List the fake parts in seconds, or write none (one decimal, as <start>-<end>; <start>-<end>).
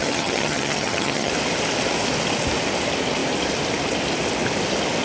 0.0-1.3